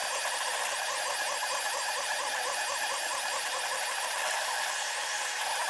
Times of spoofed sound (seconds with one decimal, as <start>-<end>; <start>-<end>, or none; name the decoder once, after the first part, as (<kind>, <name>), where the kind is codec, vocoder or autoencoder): none